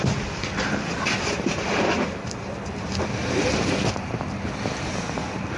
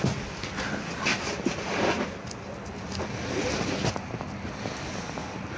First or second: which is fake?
first